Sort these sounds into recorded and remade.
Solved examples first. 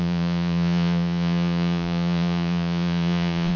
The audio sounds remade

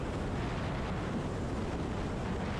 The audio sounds recorded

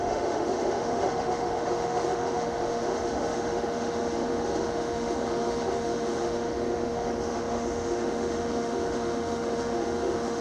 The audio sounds remade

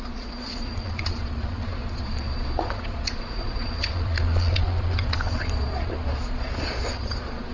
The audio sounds remade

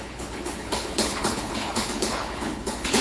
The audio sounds remade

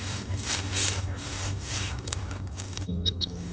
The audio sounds remade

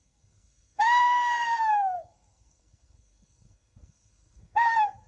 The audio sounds remade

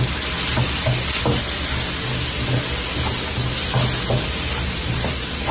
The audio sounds recorded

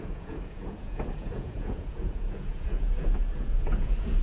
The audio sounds remade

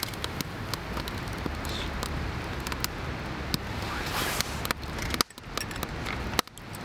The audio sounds recorded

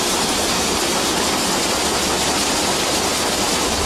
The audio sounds remade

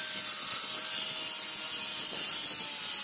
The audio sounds recorded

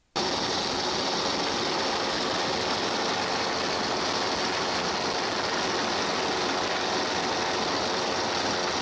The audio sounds recorded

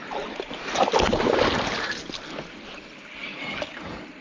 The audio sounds recorded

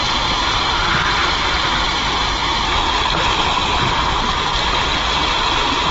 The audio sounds recorded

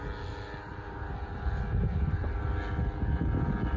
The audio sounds recorded